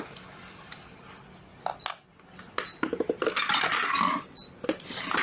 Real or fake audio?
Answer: real